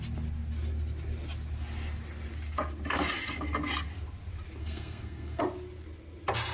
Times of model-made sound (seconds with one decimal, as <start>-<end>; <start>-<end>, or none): 4.6-5.4